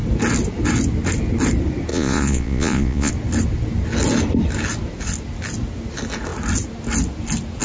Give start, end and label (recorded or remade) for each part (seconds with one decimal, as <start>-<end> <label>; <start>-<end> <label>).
0.0-1.9 recorded; 1.9-3.1 remade; 3.1-7.6 recorded